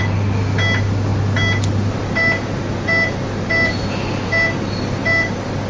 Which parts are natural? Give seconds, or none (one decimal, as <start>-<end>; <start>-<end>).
0.0-5.7